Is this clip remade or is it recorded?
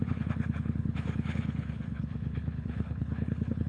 remade